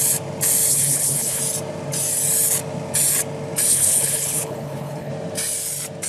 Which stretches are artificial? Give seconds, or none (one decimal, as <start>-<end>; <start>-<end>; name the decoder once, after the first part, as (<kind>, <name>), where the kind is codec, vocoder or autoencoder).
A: 0.7-1.4 (codec, HILCodec); 3.7-5.1